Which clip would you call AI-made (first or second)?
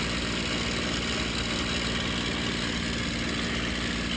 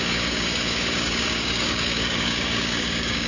second